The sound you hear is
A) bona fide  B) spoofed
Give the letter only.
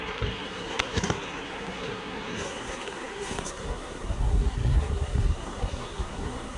B